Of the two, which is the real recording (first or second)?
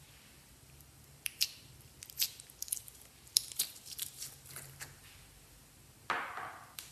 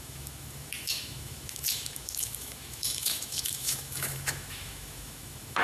first